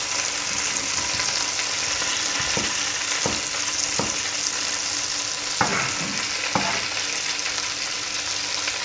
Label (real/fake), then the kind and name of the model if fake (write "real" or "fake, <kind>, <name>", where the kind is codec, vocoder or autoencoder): real